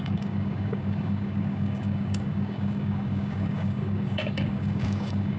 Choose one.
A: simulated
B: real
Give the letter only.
A